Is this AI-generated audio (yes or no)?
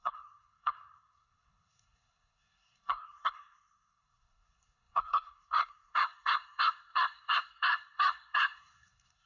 yes